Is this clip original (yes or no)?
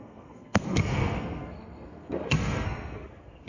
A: no